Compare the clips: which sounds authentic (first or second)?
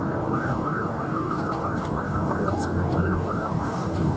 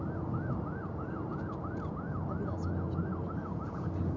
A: second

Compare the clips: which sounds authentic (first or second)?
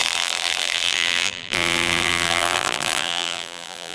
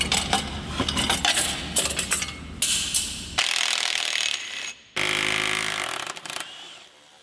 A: second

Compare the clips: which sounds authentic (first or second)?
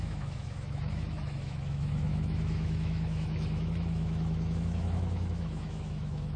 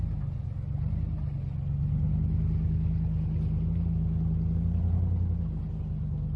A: second